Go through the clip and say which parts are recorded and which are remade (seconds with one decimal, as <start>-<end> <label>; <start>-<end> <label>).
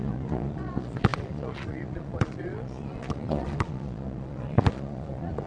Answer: 0.0-5.5 remade